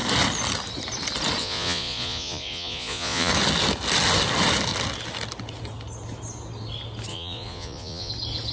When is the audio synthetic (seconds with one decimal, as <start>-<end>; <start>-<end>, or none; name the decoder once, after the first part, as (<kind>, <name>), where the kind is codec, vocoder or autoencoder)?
1.4-3.3 (vocoder, Vocos); 7.1-8.1